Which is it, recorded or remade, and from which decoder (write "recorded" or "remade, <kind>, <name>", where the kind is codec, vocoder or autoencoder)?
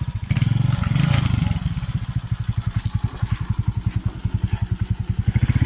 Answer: recorded